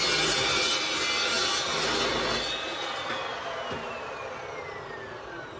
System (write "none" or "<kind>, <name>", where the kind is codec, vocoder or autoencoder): none